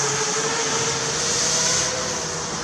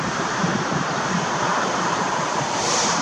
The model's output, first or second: second